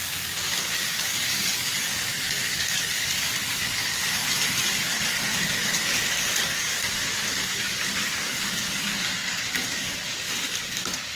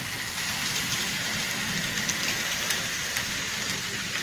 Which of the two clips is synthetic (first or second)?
first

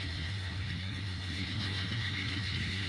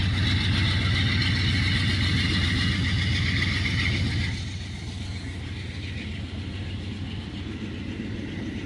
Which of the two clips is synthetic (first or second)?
first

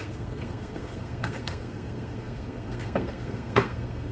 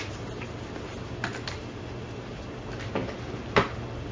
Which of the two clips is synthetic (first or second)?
first